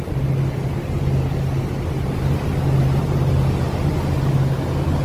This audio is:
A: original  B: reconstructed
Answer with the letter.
A